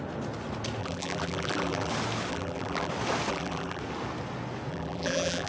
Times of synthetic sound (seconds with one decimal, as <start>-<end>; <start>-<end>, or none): 0.8-1.9; 2.3-2.9; 3.3-3.8; 4.7-5.5